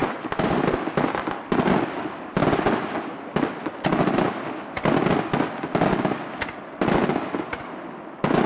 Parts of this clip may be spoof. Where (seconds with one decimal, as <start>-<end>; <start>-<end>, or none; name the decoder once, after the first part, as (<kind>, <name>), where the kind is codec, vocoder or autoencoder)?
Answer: 0.0-0.6 (vocoder, BigVGAN v2)